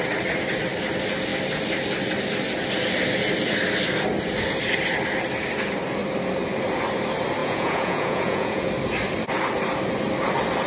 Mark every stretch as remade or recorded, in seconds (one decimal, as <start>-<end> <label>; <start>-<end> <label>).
0.0-7.4 recorded; 7.4-8.7 remade; 8.7-10.7 recorded